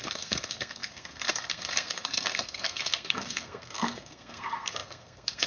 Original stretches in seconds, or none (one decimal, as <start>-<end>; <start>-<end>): none